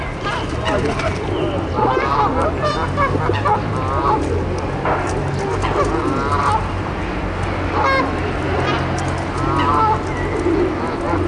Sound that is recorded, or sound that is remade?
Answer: recorded